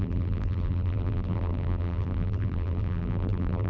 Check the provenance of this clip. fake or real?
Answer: fake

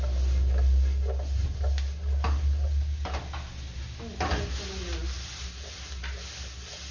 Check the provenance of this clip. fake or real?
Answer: real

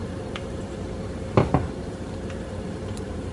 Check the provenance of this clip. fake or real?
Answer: fake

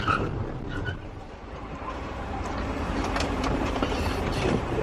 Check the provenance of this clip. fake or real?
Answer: fake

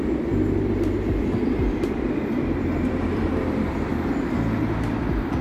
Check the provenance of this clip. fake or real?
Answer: fake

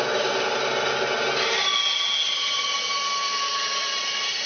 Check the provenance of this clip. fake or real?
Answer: real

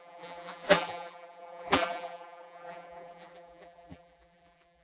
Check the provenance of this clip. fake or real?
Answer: fake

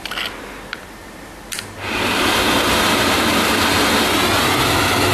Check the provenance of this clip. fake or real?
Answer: real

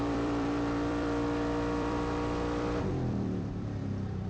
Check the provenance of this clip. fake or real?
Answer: fake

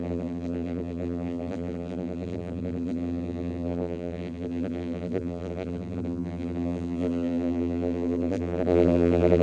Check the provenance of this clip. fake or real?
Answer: fake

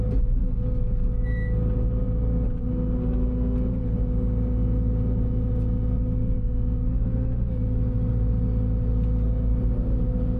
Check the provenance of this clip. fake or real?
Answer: real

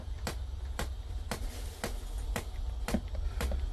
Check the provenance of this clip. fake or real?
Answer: real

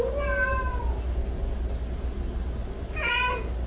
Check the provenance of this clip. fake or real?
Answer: real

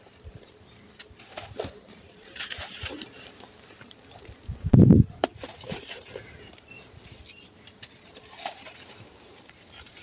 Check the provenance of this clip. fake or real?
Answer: fake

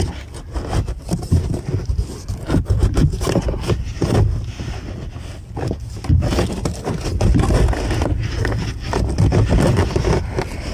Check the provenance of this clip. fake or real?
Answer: real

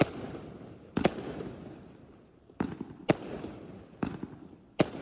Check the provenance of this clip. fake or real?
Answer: fake